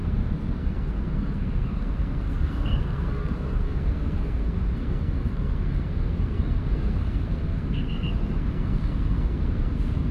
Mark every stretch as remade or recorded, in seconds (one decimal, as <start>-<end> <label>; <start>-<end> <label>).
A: 0.0-10.1 remade